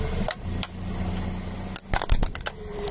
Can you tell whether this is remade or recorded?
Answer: recorded